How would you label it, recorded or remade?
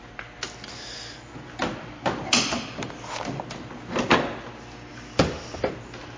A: recorded